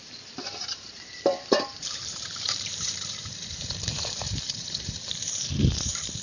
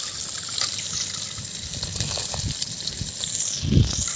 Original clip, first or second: second